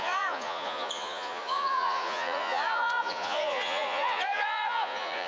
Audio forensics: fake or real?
fake